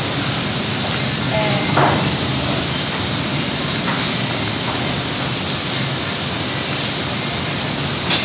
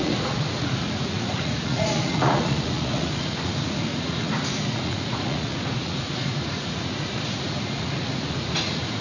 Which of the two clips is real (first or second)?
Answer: first